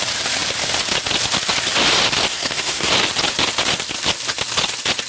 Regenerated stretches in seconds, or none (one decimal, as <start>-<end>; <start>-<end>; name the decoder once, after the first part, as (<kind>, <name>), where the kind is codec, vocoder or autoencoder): 2.3-2.9 (codec, SNAC)